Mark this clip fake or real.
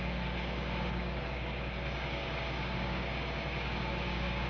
fake